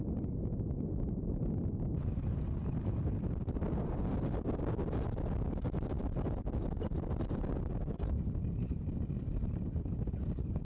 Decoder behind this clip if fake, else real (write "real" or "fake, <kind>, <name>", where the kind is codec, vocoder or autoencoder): real